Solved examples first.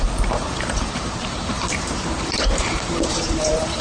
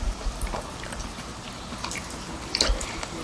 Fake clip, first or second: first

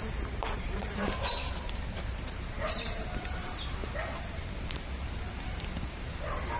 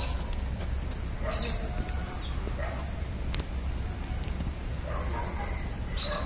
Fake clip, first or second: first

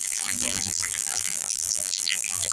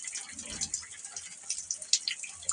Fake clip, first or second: first